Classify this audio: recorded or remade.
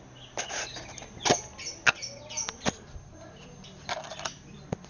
recorded